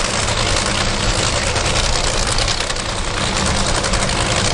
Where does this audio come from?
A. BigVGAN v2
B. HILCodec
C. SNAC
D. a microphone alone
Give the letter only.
D